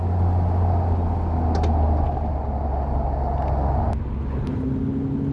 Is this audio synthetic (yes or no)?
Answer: no